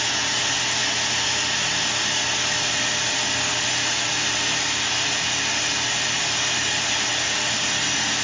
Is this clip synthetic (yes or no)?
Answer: no